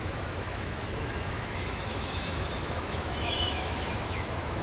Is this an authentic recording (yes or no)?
no